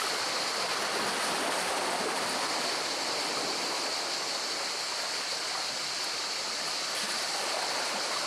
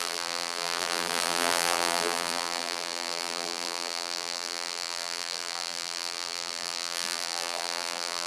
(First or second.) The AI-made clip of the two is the second